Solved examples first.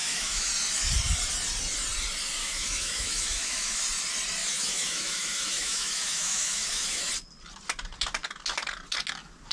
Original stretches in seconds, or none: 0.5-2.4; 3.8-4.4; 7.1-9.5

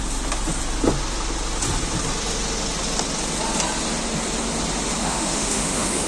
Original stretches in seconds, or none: 0.0-5.0

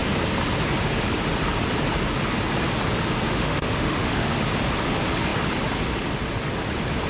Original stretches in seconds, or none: 0.0-3.3; 4.3-7.1

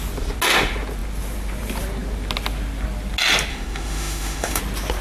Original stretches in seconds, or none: 0.0-3.5; 4.6-5.0

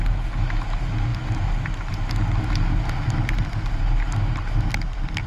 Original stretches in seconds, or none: 0.0-5.3

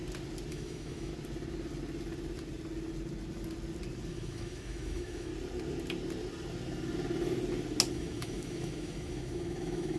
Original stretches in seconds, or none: 0.0-0.5; 1.1-4.1; 5.3-7.9

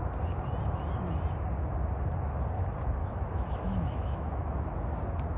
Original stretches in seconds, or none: 0.0-3.0; 5.0-5.4

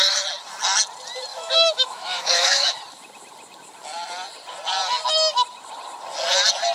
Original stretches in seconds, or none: 0.0-1.3; 2.7-6.7